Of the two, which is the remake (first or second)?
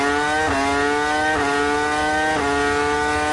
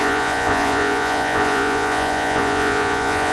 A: second